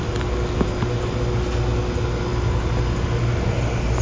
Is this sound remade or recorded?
recorded